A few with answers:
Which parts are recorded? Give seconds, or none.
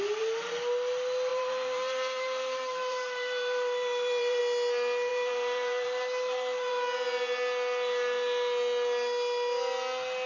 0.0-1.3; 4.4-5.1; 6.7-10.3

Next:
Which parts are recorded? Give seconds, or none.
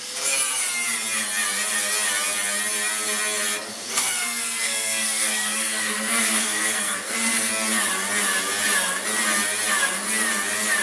0.0-3.7; 7.5-10.8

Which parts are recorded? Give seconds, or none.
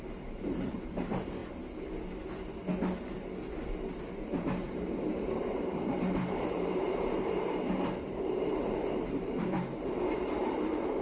1.4-4.0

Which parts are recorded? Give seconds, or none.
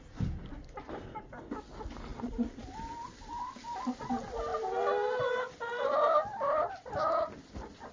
0.0-2.1; 3.2-7.9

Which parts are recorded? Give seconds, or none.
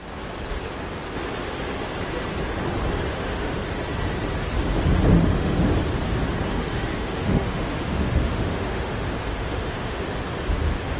0.0-3.1; 3.6-5.1; 5.6-6.5; 10.0-11.0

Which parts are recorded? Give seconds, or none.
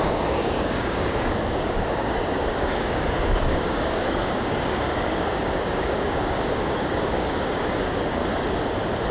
8.2-9.1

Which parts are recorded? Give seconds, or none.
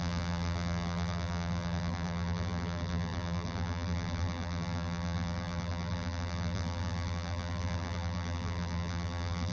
none